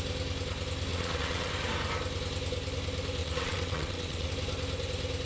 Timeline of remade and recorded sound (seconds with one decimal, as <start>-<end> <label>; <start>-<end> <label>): 0.0-0.9 recorded; 0.9-1.5 remade; 1.5-3.2 recorded; 3.2-4.3 remade; 4.3-5.3 recorded